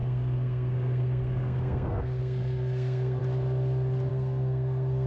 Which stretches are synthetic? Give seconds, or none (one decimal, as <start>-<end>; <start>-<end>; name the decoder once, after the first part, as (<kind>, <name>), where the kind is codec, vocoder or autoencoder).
0.0-3.2 (codec, SNAC); 4.1-5.1